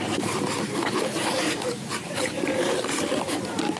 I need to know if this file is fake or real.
fake